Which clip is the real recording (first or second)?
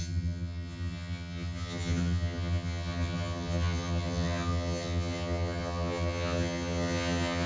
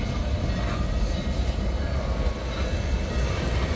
second